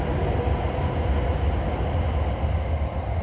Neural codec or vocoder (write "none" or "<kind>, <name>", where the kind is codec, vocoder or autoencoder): none